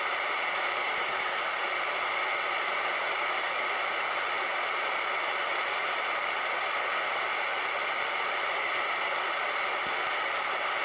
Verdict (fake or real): real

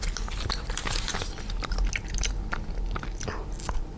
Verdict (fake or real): real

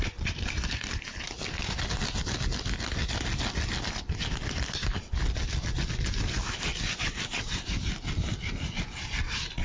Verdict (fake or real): real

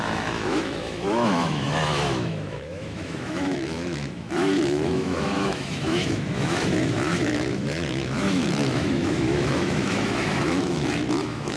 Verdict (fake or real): fake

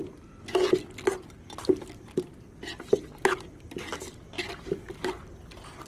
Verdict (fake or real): real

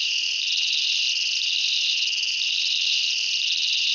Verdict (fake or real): real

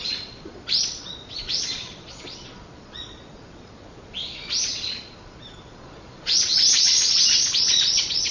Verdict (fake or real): fake